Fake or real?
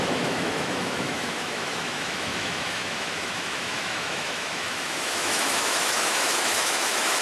fake